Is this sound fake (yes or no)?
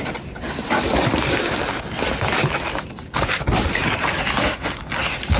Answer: no